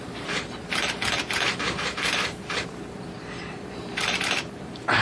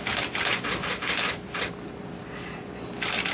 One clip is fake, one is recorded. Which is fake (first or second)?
first